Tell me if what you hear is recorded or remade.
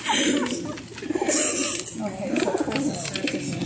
recorded